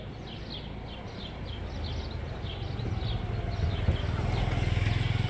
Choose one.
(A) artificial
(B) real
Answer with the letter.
B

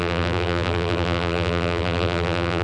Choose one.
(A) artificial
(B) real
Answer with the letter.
A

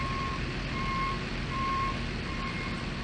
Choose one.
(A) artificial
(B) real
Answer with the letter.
A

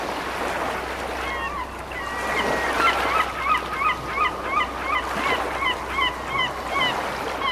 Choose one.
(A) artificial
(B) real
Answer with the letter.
B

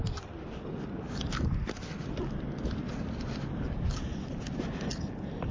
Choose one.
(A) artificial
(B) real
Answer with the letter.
B